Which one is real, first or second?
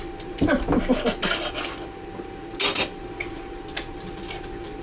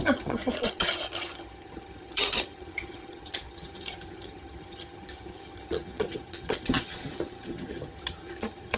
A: first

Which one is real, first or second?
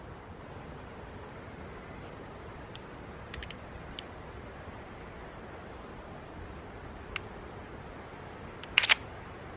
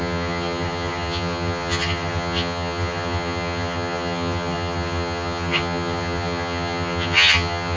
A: first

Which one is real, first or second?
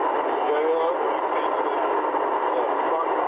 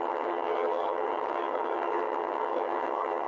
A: first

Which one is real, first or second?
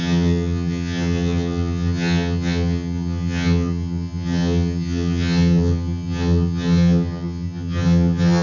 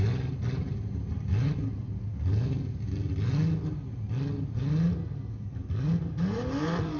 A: second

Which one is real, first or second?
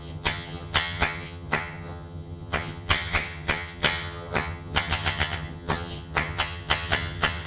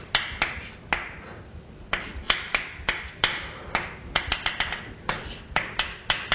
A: second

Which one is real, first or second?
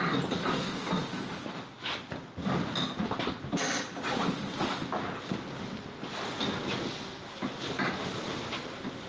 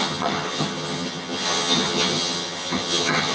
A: first